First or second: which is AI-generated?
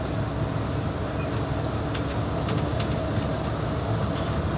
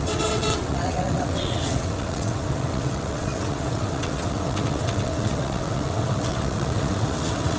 second